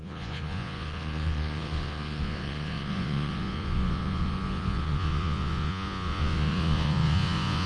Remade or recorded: remade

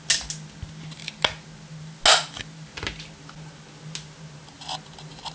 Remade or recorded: recorded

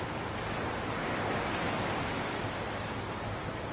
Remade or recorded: recorded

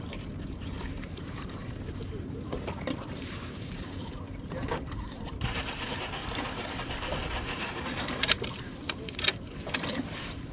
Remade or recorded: remade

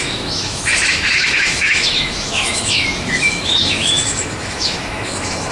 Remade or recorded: remade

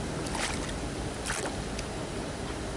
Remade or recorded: recorded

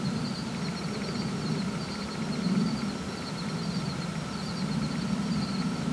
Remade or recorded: recorded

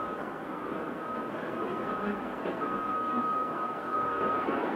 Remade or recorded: remade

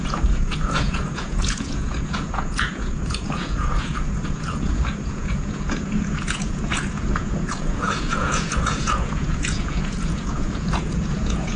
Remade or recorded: remade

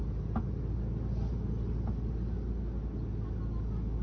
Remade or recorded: recorded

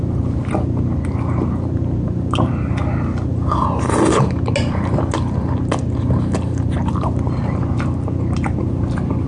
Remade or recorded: recorded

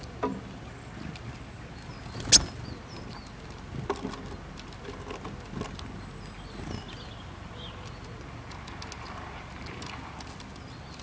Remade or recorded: recorded